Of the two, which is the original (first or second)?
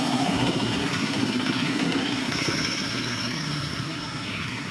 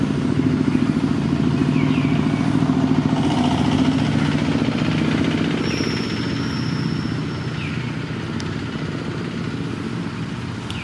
second